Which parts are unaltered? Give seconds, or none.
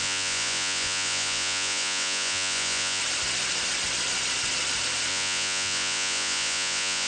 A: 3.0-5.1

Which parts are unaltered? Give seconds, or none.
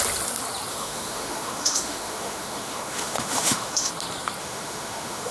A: 0.0-0.7; 3.9-4.4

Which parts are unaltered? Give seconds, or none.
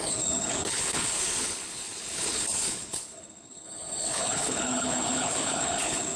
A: none